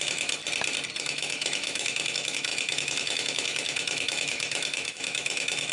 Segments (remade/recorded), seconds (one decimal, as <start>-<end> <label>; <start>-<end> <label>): 0.0-0.4 remade; 0.4-1.0 recorded; 1.0-5.7 remade

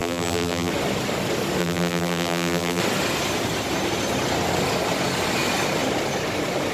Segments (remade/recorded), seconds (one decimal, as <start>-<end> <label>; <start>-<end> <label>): 0.0-0.7 remade; 0.7-1.6 recorded; 1.6-2.8 remade; 2.8-6.7 recorded

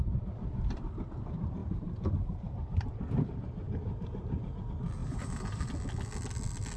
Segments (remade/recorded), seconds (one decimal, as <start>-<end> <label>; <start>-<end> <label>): 0.0-1.6 recorded; 1.6-4.6 remade; 4.6-5.0 recorded; 5.0-5.7 remade; 5.7-6.8 recorded

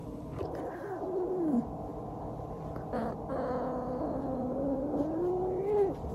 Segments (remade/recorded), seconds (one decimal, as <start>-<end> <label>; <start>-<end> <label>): 0.0-0.9 remade; 0.9-6.1 recorded

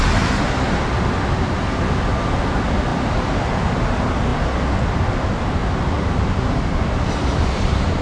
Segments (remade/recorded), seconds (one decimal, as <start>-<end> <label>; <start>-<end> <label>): 0.0-8.0 recorded